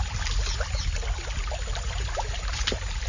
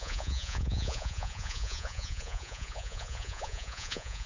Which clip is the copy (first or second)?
second